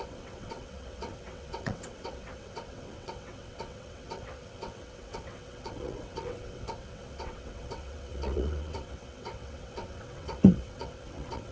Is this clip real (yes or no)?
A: no